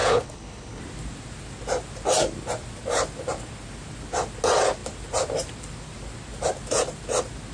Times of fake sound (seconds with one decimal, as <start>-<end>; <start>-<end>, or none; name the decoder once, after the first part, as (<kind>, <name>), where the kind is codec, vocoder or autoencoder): 0.0-0.8 (codec, HILCodec)